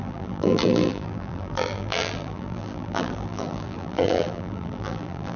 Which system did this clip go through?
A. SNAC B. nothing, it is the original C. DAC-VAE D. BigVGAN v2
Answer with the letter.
D